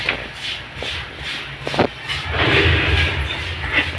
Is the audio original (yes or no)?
yes